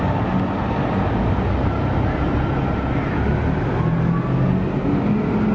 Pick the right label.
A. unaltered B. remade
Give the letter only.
A